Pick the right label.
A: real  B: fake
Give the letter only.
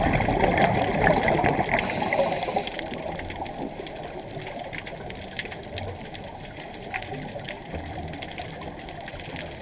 A